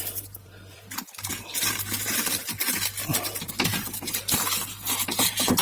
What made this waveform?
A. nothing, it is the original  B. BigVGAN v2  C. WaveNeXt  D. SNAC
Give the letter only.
B